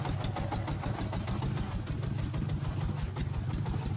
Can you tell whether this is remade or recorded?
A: recorded